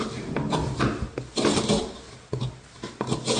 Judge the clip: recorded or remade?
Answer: recorded